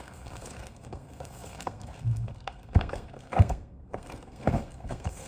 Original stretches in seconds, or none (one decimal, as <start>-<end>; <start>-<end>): none